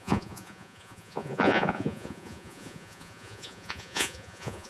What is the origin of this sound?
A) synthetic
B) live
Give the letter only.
A